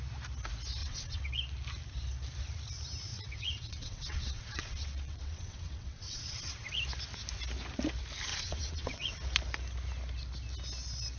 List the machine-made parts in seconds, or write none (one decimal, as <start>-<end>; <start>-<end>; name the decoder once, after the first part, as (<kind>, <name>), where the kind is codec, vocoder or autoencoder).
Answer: 0.8-1.3 (vocoder, WaveNeXt); 3.1-6.7; 8.3-9.1